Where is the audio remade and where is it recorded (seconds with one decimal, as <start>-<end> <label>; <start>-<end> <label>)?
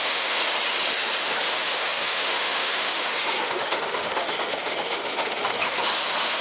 0.0-0.4 remade; 0.4-1.2 recorded; 1.2-6.4 remade